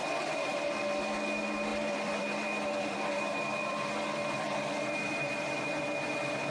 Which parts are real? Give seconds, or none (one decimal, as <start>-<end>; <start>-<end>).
0.6-1.7; 5.6-6.5